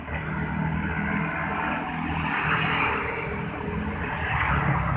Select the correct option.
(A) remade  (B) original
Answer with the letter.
B